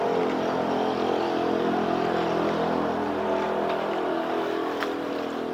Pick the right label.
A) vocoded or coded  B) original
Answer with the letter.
B